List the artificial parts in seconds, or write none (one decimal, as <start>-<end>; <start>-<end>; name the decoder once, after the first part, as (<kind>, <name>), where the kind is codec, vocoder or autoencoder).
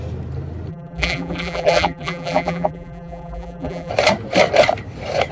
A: 0.7-3.9 (vocoder, BigVGAN v2)